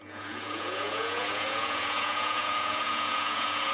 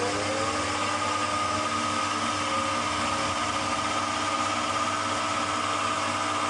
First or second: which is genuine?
second